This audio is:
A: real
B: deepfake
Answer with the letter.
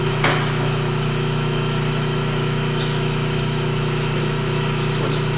B